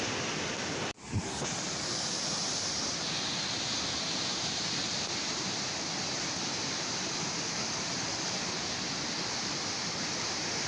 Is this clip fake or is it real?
fake